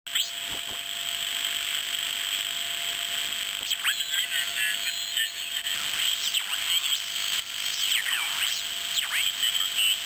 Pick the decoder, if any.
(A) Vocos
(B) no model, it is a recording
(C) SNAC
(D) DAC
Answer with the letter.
B